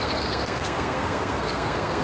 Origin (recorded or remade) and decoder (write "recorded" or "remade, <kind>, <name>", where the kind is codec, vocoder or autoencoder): remade, codec, SNAC